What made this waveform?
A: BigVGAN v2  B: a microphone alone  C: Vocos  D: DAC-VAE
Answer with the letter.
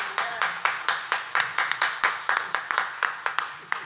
C